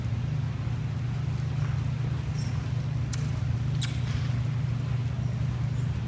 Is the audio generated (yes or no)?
no